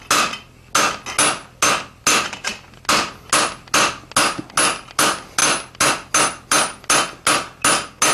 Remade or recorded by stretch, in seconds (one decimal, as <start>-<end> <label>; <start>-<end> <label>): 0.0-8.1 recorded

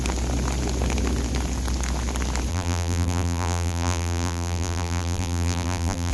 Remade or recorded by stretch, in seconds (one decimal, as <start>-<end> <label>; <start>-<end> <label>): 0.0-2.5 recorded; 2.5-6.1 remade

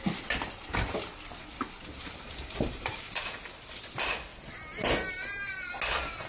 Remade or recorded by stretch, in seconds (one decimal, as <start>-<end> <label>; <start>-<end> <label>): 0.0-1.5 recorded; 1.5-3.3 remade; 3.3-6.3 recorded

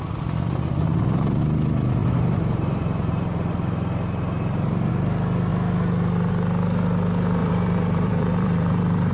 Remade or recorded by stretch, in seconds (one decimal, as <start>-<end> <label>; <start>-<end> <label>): 0.0-0.9 recorded; 0.9-1.4 remade; 1.4-2.0 recorded; 2.0-4.9 remade; 4.9-7.4 recorded; 7.4-9.1 remade

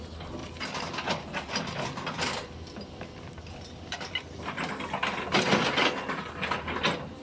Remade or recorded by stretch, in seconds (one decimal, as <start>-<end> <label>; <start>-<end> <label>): 0.0-0.4 recorded; 0.4-4.7 remade; 4.7-7.2 recorded